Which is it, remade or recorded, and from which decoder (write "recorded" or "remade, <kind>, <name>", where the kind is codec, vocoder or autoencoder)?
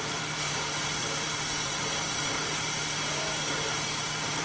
remade, vocoder, BigVGAN v2